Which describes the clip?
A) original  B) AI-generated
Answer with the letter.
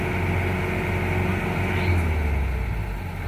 A